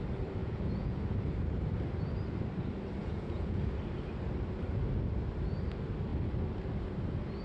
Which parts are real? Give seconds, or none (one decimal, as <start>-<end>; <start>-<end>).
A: 0.0-0.4; 1.0-3.0; 3.6-7.4